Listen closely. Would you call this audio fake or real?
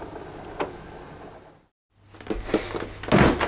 real